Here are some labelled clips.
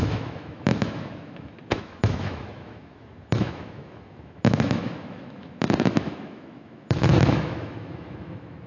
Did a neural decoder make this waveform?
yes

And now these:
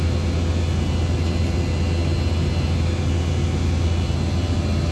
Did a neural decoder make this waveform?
no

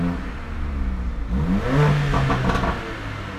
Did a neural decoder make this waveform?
no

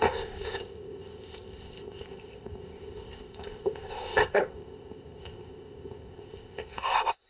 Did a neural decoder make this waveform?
yes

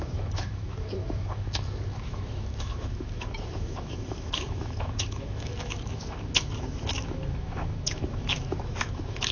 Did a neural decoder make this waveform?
yes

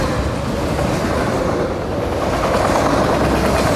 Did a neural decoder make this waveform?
no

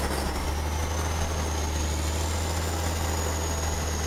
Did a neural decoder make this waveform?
no